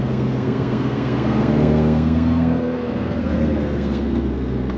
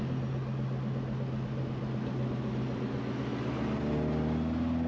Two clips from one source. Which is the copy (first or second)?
first